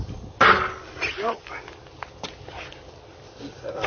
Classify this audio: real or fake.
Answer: real